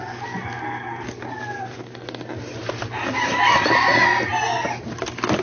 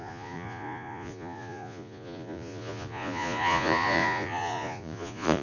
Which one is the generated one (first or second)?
second